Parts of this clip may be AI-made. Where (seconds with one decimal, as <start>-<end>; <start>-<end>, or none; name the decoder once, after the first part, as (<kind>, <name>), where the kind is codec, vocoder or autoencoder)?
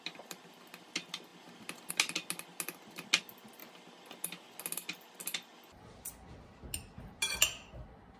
none